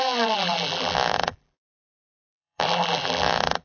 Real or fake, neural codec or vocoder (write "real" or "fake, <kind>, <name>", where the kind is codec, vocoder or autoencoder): fake, vocoder, BigVGAN v2